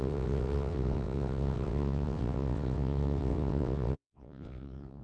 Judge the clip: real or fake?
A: fake